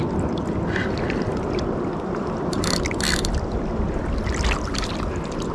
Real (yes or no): yes